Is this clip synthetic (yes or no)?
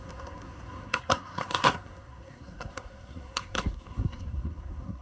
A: yes